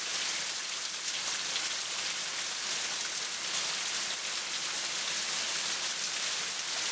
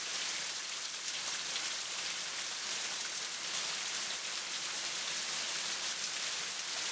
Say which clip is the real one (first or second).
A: first